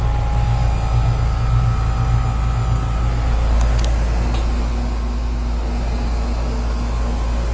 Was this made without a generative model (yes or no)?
yes